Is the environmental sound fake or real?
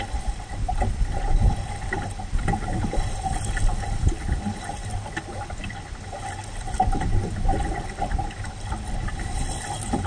real